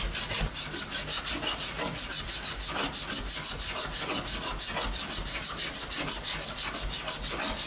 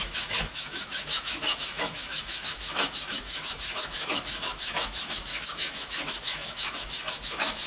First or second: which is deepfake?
second